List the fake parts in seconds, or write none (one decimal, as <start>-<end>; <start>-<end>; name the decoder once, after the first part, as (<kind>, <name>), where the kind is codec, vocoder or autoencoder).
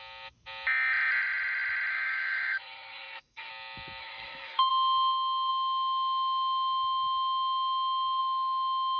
1.9-3.5 (codec, SNAC); 4.0-4.7